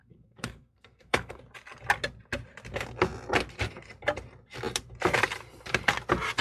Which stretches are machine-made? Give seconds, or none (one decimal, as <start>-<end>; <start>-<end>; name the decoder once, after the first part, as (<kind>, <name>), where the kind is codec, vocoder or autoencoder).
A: 0.0-1.4 (codec, SNAC)